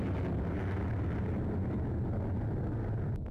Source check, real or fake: real